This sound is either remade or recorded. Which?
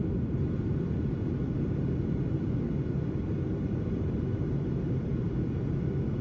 recorded